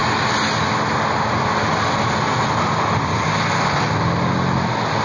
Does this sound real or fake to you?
real